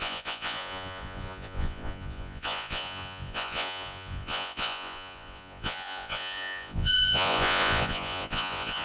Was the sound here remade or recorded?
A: remade